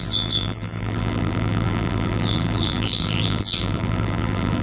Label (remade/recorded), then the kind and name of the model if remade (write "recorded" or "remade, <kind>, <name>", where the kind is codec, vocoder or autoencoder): remade, vocoder, BigVGAN v2